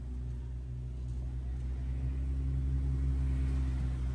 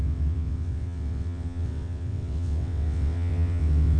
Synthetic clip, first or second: second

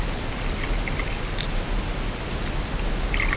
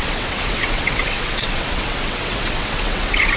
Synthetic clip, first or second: second